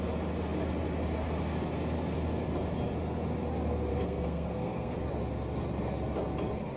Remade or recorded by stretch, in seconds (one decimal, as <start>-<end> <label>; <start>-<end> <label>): 0.0-3.9 recorded; 3.9-4.9 remade; 4.9-6.8 recorded